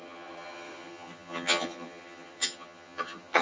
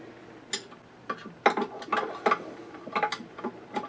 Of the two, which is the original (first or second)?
second